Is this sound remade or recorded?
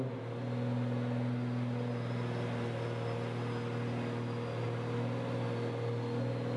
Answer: recorded